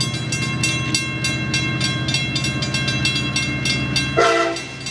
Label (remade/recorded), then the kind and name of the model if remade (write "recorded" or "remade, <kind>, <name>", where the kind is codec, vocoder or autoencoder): recorded